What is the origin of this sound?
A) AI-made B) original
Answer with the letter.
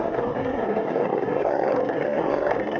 A